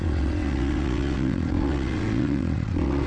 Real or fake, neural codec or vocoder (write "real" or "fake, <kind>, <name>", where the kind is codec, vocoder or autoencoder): fake, vocoder, WaveNeXt